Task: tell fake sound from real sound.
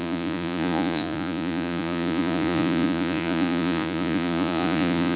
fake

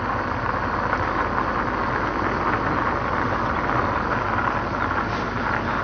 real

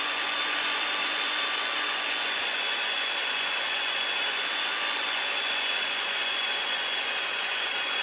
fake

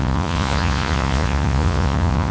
fake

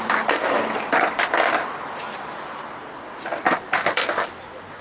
real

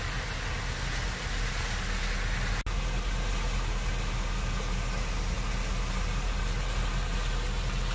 real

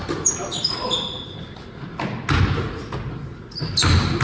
real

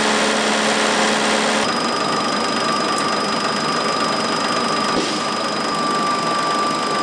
real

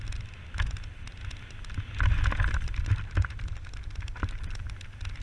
real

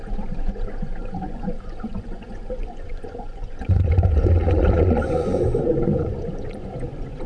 fake